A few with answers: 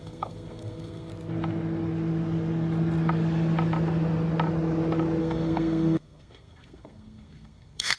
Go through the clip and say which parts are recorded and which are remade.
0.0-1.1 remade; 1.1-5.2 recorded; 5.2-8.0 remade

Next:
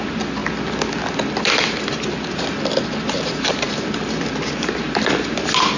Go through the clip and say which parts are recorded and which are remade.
0.0-5.8 recorded

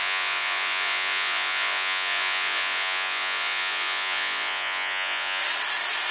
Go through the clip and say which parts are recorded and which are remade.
0.0-5.4 remade; 5.4-6.1 recorded

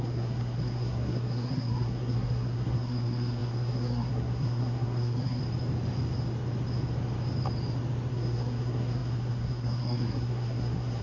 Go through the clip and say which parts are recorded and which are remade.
0.0-5.4 remade; 5.4-8.1 recorded; 8.1-11.0 remade

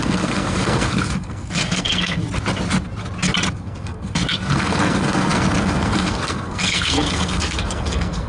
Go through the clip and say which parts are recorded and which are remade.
0.0-2.2 remade; 2.2-3.5 recorded; 3.5-8.3 remade